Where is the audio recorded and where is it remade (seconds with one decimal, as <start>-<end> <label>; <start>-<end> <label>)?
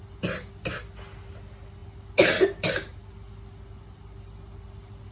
0.0-5.1 recorded